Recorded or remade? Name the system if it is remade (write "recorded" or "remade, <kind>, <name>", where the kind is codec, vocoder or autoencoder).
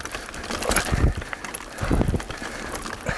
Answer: recorded